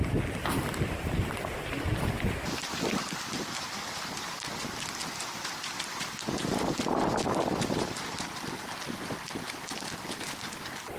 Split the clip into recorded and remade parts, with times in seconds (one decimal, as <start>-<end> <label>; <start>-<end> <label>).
0.0-11.0 recorded